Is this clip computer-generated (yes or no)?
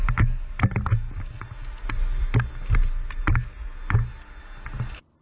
no